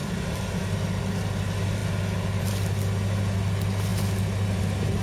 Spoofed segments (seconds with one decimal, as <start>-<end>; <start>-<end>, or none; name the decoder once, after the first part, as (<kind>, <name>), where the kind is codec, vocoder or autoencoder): none